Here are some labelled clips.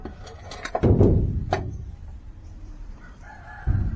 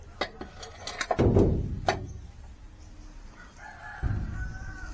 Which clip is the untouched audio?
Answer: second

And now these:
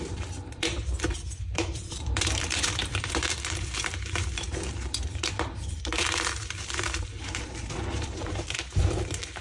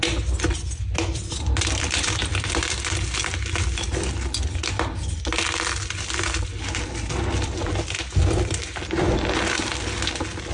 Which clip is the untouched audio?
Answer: second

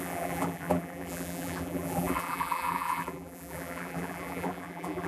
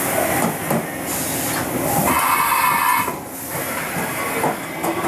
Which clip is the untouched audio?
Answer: second